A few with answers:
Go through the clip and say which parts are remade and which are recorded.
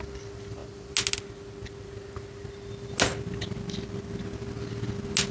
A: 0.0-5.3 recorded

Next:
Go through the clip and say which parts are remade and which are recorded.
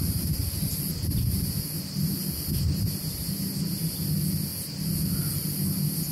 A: 0.0-6.1 recorded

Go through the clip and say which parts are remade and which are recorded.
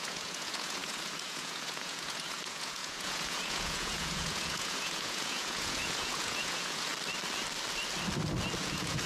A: 0.0-6.9 remade; 6.9-8.6 recorded; 8.6-9.1 remade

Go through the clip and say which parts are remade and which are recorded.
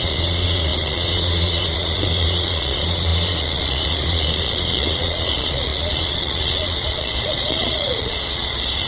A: 0.0-8.9 remade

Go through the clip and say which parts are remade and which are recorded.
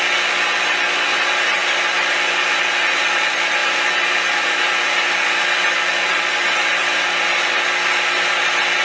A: 0.0-8.8 recorded